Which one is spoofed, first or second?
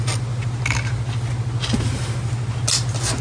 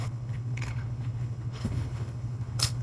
second